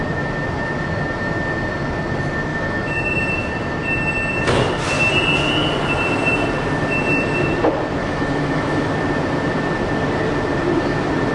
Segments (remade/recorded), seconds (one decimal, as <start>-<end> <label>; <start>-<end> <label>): 0.0-2.5 recorded; 2.5-3.2 remade; 3.2-8.0 recorded; 8.0-8.9 remade; 8.9-11.3 recorded